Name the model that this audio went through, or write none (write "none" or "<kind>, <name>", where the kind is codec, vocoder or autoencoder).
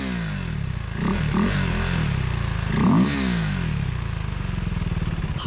none